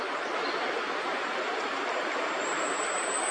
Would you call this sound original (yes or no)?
no